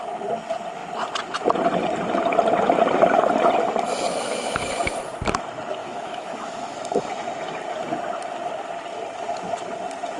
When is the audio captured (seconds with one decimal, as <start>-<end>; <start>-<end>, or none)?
0.0-5.8; 6.8-10.2